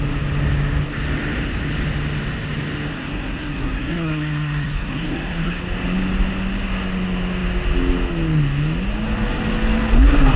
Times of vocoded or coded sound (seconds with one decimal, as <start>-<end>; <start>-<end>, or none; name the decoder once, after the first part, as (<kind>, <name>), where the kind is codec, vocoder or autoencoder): 2.9-5.6 (codec, SNAC)